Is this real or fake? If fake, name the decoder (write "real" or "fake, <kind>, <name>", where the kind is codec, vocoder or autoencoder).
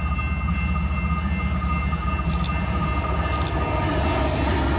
real